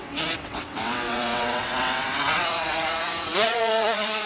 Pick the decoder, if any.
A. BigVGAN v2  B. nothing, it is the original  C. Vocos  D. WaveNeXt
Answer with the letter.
D